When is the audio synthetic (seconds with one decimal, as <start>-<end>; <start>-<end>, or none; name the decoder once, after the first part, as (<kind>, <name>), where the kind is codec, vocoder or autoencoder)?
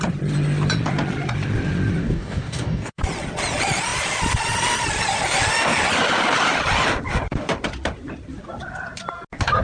2.0-3.0 (codec, DAC)